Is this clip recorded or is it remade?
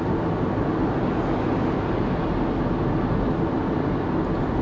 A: recorded